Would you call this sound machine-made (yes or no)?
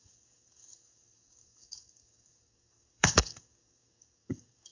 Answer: yes